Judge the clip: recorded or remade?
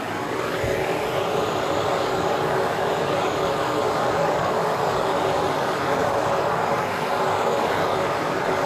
remade